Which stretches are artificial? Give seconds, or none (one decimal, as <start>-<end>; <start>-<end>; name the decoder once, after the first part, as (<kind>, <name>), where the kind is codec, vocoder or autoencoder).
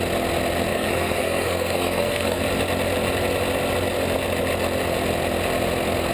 0.7-2.4 (codec, SNAC)